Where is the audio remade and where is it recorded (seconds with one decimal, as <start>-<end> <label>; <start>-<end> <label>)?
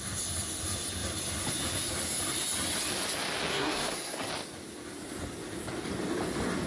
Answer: 0.0-3.5 recorded; 3.5-4.3 remade; 4.3-6.7 recorded